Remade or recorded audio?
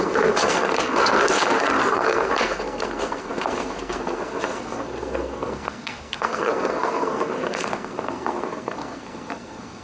remade